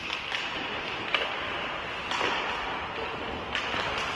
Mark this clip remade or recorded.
recorded